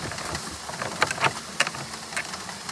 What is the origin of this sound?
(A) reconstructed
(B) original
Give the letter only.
B